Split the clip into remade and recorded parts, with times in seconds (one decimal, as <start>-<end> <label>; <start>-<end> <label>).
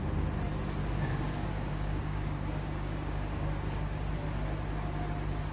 0.0-0.8 recorded; 0.8-4.1 remade; 4.1-5.5 recorded